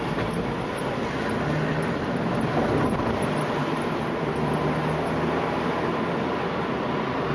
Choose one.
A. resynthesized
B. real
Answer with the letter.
B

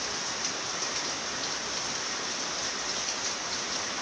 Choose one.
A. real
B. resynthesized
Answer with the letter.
A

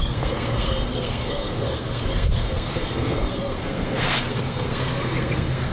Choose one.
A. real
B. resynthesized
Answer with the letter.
B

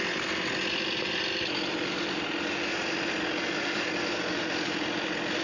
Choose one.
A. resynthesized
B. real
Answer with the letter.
B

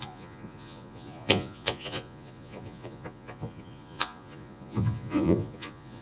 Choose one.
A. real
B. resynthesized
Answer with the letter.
B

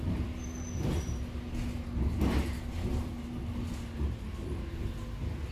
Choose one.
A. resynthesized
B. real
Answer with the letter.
B